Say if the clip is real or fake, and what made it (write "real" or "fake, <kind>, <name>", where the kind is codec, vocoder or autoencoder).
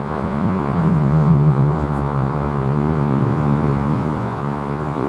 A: fake, vocoder, Vocos